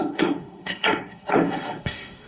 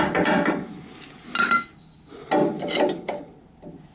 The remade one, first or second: first